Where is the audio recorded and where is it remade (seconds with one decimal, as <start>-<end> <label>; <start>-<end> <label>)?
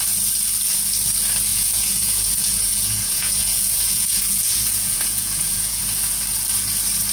0.0-1.5 recorded; 1.5-5.8 remade; 5.8-7.1 recorded